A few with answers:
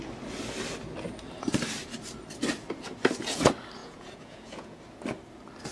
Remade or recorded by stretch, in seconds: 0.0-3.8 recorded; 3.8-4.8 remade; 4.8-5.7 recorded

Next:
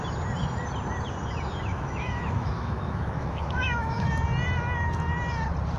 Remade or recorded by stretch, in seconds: 0.0-1.7 recorded; 1.7-4.1 remade; 4.1-5.8 recorded

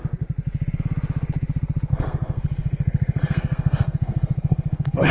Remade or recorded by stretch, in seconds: 0.0-1.9 recorded; 1.9-5.1 remade

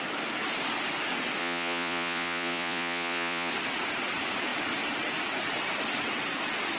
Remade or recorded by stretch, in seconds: 0.0-1.4 recorded; 1.4-3.5 remade; 3.5-6.8 recorded

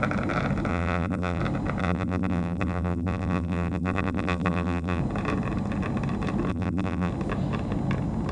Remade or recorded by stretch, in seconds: 0.0-0.7 recorded; 0.7-1.4 remade; 1.4-1.8 recorded; 1.8-5.0 remade; 5.0-6.5 recorded; 6.5-7.1 remade; 7.1-8.3 recorded